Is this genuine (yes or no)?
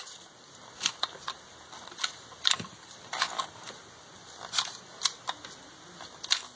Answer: yes